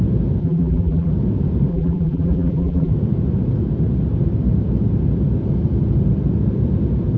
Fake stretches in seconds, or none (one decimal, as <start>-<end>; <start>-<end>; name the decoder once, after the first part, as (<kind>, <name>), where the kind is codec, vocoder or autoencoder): 0.4-1.1 (vocoder, BigVGAN v2); 1.7-2.9